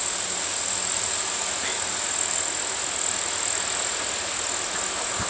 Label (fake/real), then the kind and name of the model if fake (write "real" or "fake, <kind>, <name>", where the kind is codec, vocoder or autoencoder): real